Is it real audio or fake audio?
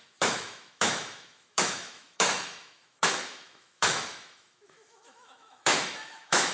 fake